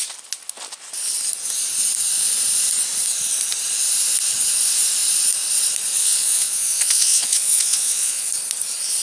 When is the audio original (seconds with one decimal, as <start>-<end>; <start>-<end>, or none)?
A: 0.0-6.0; 8.3-9.0